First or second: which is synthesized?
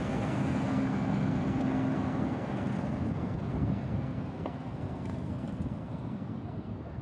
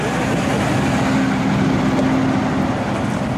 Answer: first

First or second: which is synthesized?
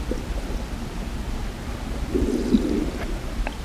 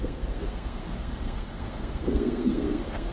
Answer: second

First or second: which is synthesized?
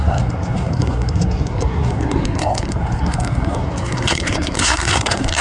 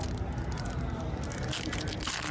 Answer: first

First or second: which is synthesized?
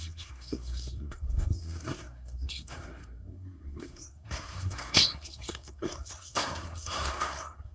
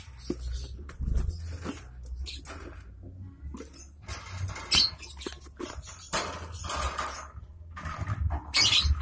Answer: first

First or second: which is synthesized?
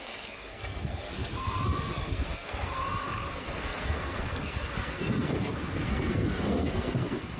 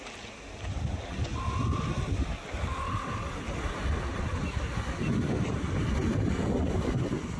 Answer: first